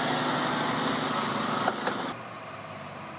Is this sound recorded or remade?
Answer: recorded